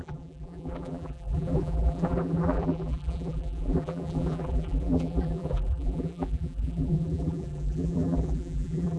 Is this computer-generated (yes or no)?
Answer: yes